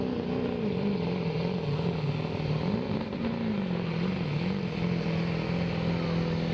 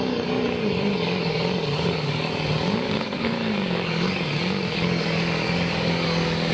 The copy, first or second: second